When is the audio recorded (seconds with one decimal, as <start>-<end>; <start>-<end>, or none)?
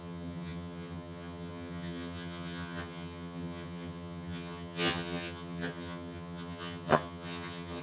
none